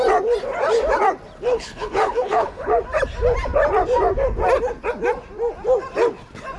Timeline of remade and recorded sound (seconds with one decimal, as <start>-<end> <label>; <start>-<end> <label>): 0.0-1.5 recorded; 1.5-2.8 remade; 2.8-6.6 recorded